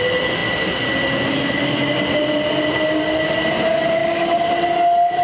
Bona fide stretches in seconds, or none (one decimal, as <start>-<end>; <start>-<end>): 0.0-5.2